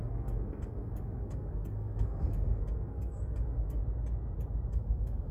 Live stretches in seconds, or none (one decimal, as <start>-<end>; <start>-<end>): 3.8-4.7